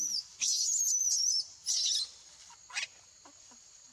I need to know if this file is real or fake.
real